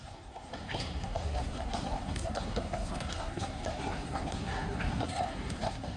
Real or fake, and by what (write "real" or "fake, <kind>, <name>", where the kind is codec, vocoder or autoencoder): fake, codec, SNAC